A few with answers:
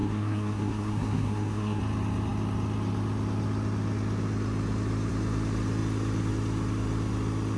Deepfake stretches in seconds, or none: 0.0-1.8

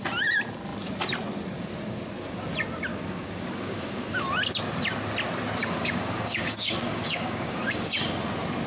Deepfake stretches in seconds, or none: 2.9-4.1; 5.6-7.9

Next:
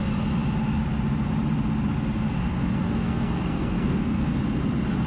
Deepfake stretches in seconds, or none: 2.5-4.3

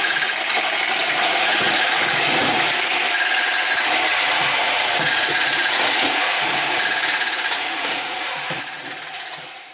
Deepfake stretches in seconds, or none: 1.0-2.7; 4.1-9.7

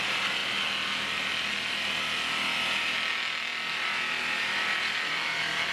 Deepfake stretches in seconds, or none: none

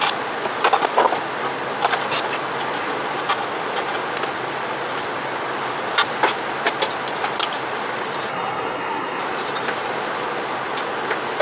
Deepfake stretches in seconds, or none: 8.3-9.2

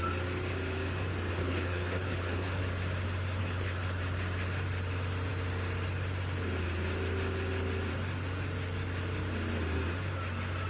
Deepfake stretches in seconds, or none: 1.3-2.6; 3.4-4.0

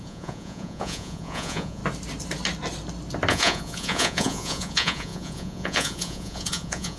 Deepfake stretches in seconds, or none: 0.0-1.8; 3.3-7.0